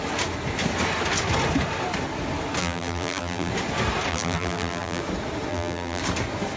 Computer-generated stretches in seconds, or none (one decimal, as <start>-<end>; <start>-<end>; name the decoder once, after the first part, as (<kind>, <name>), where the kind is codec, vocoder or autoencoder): 2.6-3.5 (vocoder, BigVGAN v2); 4.1-5.0; 5.5-6.0